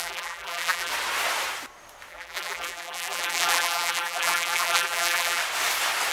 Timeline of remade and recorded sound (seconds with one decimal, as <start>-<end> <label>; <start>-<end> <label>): 0.0-0.9 remade; 0.9-2.1 recorded; 2.1-5.4 remade; 5.4-6.1 recorded